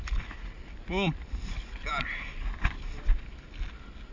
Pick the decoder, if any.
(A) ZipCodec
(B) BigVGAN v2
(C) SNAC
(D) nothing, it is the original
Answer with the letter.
D